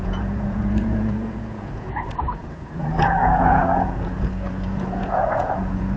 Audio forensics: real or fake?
fake